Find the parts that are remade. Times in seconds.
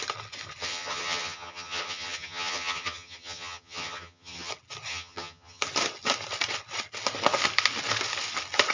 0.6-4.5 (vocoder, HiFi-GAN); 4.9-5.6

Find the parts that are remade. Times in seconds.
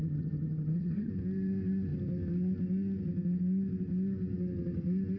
0.0-1.1 (vocoder, HiFi-GAN)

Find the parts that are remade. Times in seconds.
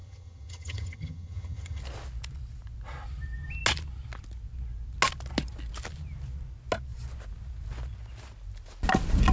0.0-1.8 (vocoder, HiFi-GAN)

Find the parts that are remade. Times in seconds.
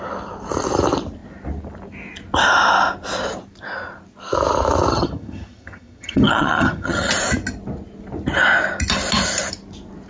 4.9-7.1 (vocoder, HiFi-GAN)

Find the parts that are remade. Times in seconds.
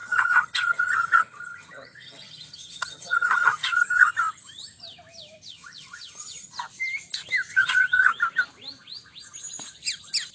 0.0-4.1 (vocoder, HiFi-GAN); 5.5-6.5; 7.5-8.1